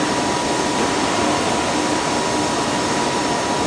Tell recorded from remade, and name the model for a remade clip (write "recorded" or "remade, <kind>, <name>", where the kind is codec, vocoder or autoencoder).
recorded